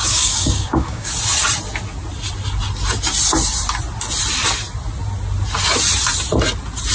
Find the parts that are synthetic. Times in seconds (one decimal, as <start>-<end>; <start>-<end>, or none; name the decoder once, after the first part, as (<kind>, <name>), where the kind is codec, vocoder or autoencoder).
0.0-1.1 (codec, DAC)